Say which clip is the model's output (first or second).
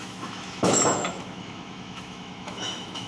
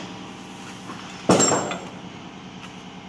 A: first